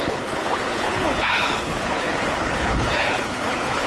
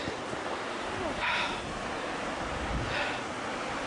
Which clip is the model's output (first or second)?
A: first